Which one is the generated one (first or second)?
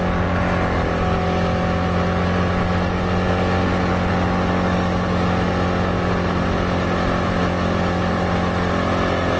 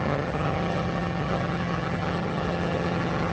second